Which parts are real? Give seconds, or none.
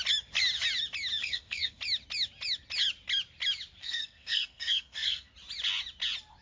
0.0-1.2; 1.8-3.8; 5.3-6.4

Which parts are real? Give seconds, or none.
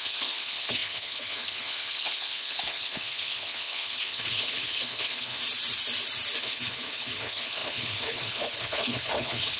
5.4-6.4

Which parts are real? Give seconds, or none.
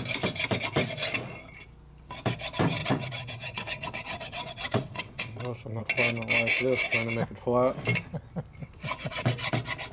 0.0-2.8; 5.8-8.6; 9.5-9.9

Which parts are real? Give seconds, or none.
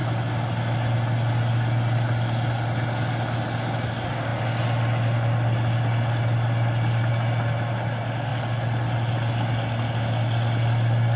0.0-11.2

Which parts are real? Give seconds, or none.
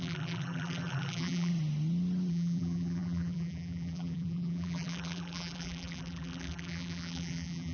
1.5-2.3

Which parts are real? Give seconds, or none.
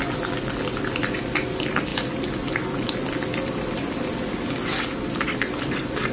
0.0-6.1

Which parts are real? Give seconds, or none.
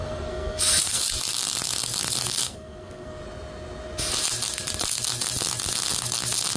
1.0-2.3; 3.2-6.6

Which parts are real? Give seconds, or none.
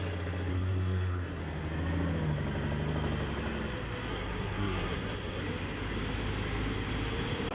0.0-0.5; 1.4-4.1; 5.4-7.5